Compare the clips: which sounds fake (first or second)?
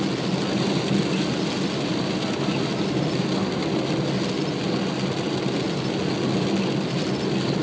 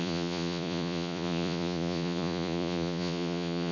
second